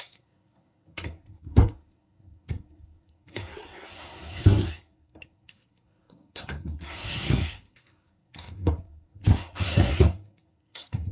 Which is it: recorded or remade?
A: remade